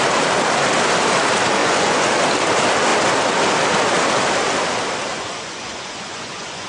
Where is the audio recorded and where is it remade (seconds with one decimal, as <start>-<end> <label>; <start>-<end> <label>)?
0.0-1.6 recorded; 1.6-2.1 remade; 2.1-5.1 recorded; 5.1-6.7 remade